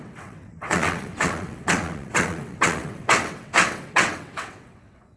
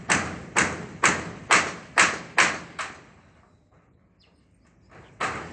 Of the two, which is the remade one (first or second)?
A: first